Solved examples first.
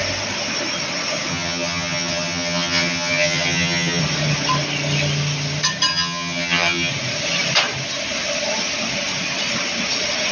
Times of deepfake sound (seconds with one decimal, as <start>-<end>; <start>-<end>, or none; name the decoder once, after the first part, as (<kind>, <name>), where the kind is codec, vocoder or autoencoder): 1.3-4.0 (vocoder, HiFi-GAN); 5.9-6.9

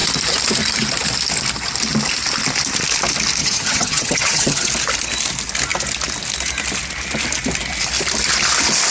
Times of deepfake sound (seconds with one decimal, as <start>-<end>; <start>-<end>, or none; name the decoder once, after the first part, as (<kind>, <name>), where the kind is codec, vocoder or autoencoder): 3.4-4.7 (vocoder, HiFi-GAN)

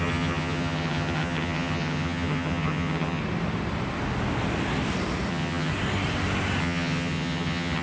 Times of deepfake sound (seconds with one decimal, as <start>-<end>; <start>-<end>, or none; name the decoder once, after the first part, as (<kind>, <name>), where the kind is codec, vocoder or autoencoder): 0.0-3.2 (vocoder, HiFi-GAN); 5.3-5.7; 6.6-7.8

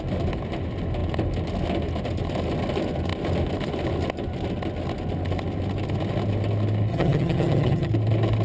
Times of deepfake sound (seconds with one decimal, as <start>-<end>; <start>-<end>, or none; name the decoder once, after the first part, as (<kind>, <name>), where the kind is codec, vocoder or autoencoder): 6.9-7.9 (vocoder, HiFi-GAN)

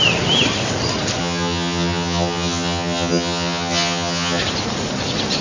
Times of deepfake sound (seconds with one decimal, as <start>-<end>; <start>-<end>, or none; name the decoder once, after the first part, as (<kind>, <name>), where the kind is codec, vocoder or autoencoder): 1.2-4.4 (vocoder, HiFi-GAN)

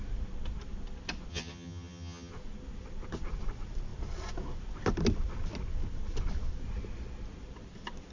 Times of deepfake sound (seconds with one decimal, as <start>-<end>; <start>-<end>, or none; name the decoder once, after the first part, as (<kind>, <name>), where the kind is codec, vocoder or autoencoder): 1.3-2.3 (vocoder, HiFi-GAN)

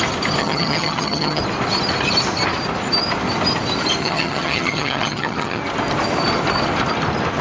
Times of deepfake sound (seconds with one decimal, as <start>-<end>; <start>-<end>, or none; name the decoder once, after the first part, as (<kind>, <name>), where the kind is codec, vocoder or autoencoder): 0.4-1.4 (vocoder, HiFi-GAN); 4.0-5.6